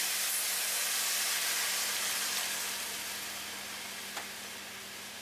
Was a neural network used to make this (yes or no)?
no